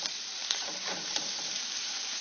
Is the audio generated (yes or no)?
yes